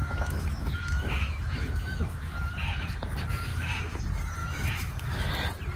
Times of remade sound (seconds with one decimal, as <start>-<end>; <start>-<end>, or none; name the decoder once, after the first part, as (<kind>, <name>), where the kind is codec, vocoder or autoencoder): 0.0-2.3 (autoencoder, DAC-VAE); 3.5-4.0; 4.4-5.3

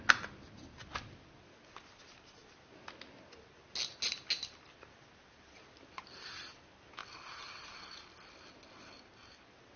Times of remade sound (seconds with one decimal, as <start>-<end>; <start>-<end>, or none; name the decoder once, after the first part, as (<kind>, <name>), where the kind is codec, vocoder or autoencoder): none